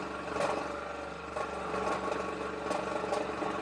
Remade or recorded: recorded